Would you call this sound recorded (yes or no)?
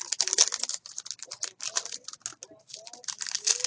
yes